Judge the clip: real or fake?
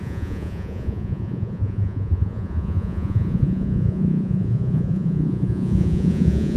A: fake